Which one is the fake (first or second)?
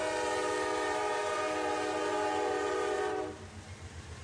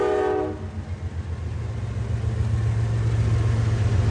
first